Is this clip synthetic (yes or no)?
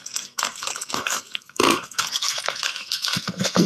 yes